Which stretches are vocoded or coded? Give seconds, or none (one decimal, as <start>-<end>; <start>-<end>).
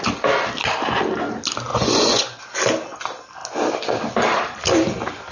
1.7-2.4